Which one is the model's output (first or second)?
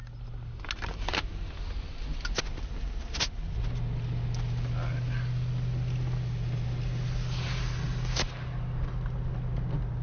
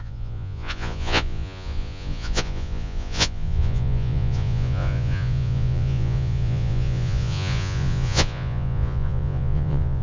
second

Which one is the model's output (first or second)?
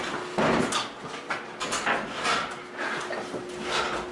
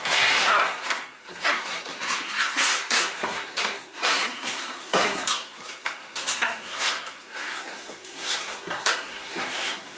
second